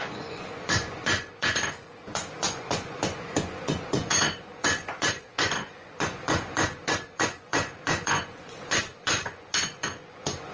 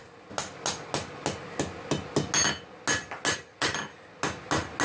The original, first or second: second